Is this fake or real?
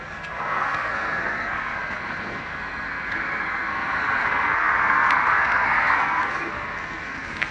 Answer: fake